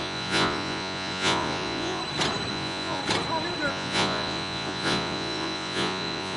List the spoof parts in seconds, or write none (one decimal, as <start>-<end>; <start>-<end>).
0.0-2.0; 2.5-3.0; 3.7-6.4